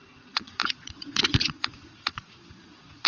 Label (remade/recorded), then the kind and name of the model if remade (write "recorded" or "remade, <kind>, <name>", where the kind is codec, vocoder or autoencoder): remade, vocoder, Vocos